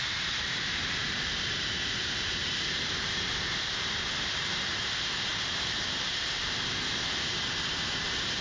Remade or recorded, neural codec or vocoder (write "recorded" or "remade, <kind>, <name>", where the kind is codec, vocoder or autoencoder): remade, vocoder, BigVGAN v2